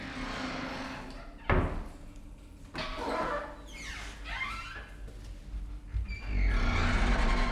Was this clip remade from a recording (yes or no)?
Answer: no